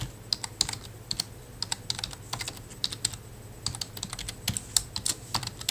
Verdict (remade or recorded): recorded